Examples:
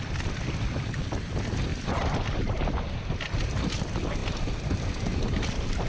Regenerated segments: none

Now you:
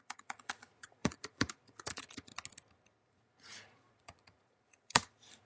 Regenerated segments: 0.0-2.3 (vocoder, Vocos); 3.1-5.5

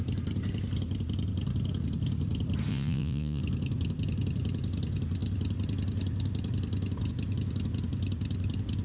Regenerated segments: 2.7-3.4 (vocoder, Vocos)

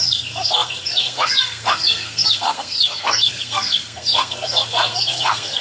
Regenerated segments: 0.0-5.6 (codec, SNAC)

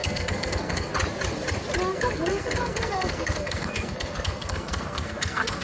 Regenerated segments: 0.0-0.9 (codec, SNAC); 1.9-5.6

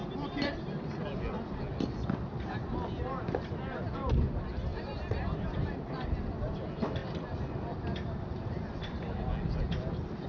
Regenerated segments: 0.0-0.6 (vocoder, BigVGAN v2); 4.7-5.9

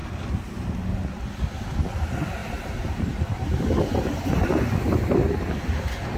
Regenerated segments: 2.4-4.3 (vocoder, BigVGAN v2)

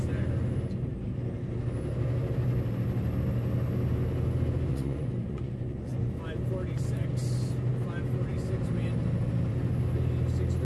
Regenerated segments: 4.7-6.1 (vocoder, Vocos)